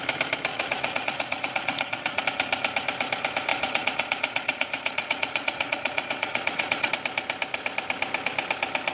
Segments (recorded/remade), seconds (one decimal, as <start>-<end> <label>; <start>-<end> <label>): 0.0-0.5 recorded; 0.5-2.2 remade; 2.2-3.5 recorded; 3.5-6.9 remade; 6.9-8.9 recorded